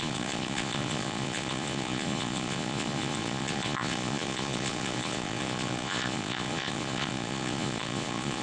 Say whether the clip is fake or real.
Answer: fake